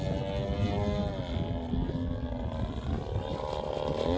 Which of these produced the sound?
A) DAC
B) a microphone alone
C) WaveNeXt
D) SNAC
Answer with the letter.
B